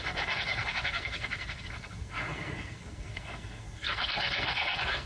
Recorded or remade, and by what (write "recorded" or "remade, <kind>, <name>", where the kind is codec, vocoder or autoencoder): remade, codec, SNAC